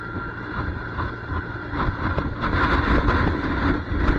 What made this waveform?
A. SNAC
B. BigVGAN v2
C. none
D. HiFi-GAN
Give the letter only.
C